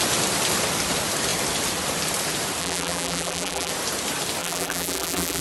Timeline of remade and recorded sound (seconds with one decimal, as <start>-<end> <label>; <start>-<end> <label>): 0.0-2.6 recorded; 2.6-3.7 remade; 3.7-4.4 recorded; 4.4-5.4 remade